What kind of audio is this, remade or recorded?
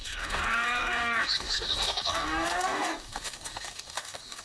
remade